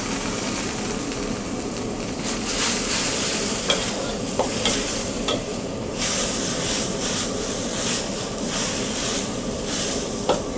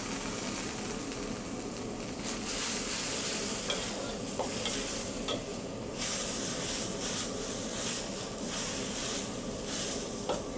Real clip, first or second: second